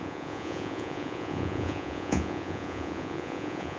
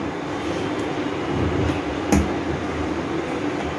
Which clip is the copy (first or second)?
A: first